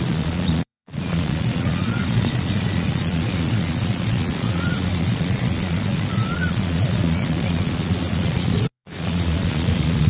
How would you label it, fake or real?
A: fake